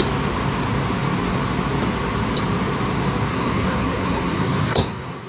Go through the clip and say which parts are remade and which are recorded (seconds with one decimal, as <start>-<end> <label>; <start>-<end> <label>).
0.0-3.3 recorded; 3.3-5.3 remade